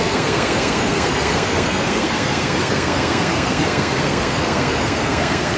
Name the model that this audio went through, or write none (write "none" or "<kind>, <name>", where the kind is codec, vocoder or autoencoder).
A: codec, SNAC